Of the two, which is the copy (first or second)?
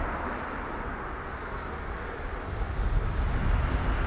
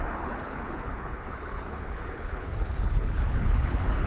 second